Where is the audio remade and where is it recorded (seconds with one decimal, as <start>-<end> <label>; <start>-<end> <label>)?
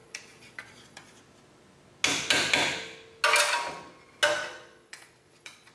0.0-1.2 remade; 1.2-4.4 recorded; 4.4-5.7 remade